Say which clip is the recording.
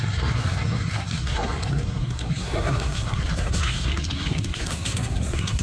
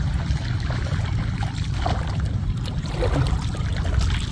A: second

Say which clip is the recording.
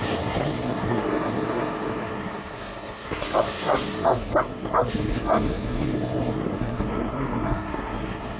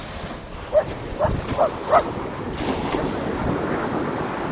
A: second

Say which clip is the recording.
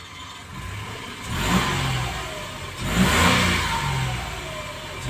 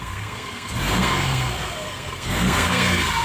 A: first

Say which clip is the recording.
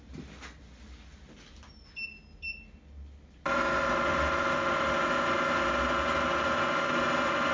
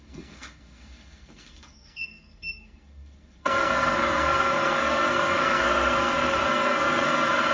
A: first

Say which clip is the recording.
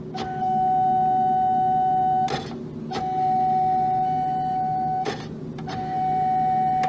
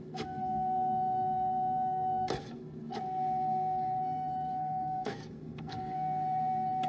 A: first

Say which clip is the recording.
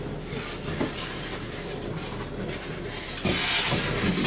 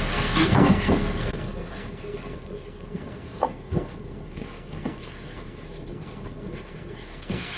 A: first